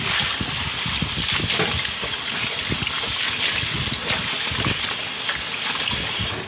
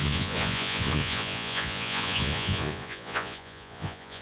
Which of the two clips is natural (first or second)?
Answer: first